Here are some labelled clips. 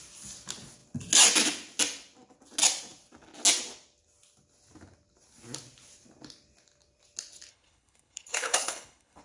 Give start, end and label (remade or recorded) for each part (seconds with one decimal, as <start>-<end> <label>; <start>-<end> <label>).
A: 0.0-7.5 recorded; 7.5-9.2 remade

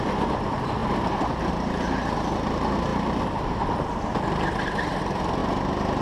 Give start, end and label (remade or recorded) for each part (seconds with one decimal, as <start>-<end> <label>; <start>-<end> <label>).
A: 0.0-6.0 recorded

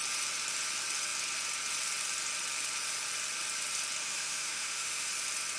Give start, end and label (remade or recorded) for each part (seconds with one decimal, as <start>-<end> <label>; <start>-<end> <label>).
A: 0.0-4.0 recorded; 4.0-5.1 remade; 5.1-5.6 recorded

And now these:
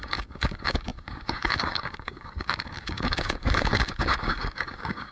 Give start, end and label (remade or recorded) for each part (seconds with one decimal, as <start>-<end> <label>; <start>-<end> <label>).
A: 0.0-5.1 remade

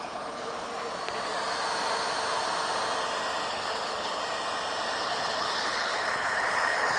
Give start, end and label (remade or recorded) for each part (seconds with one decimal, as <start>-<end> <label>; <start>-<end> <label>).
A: 0.0-0.7 remade; 0.7-3.5 recorded; 3.5-4.2 remade; 4.2-5.0 recorded; 5.0-7.0 remade